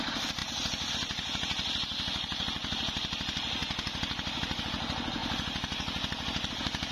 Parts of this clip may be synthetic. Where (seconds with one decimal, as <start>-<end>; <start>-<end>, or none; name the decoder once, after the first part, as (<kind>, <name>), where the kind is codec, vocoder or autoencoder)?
none